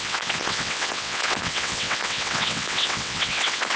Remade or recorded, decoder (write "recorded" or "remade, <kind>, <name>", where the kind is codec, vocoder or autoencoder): remade, vocoder, WaveNeXt